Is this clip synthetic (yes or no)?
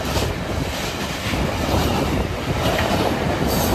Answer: no